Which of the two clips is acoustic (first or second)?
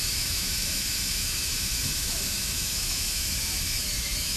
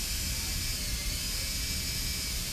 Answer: second